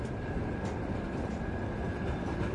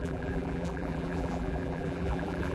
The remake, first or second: second